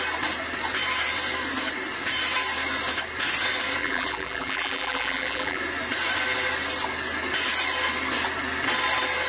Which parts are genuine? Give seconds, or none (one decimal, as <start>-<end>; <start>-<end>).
0.0-3.8; 5.6-9.3